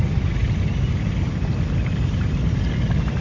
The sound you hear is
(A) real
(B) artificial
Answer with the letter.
A